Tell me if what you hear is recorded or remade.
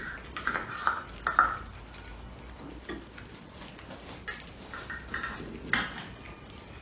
recorded